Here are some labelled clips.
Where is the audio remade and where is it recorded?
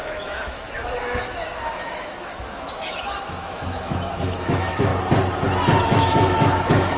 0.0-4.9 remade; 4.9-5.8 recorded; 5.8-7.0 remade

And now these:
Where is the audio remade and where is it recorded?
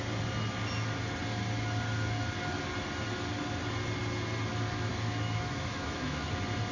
0.0-4.9 recorded; 4.9-6.3 remade; 6.3-6.7 recorded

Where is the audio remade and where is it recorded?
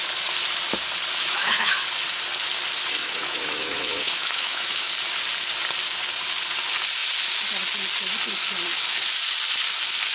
0.0-1.2 recorded; 1.2-1.7 remade; 1.7-3.0 recorded; 3.0-4.9 remade; 4.9-10.1 recorded